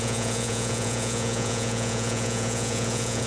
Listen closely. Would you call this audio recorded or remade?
remade